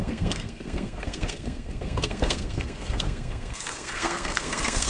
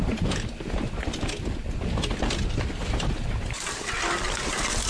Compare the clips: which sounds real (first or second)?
second